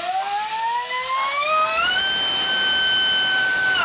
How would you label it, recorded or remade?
recorded